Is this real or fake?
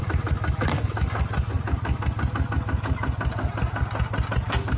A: real